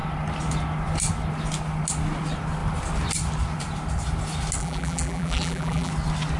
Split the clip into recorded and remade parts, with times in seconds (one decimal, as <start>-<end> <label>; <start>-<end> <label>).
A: 0.0-4.6 recorded; 4.6-5.9 remade; 5.9-6.4 recorded